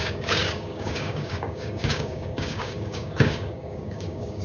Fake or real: fake